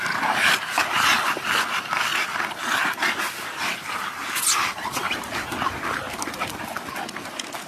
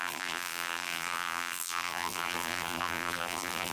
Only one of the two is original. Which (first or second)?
first